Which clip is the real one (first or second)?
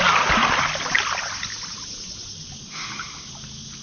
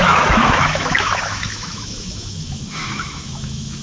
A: first